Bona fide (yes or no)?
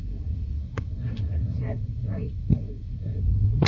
no